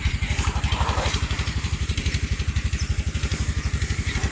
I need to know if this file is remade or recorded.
remade